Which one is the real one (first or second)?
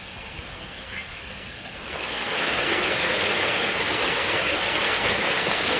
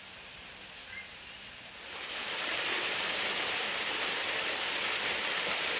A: second